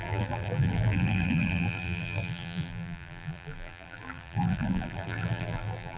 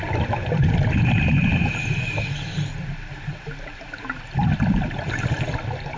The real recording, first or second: second